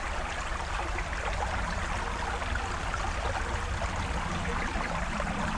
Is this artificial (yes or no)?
no